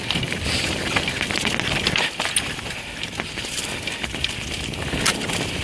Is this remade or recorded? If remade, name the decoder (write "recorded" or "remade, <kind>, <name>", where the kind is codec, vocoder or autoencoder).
recorded